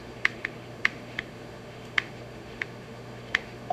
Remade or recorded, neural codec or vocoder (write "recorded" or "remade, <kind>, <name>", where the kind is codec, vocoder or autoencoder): remade, autoencoder, DAC-VAE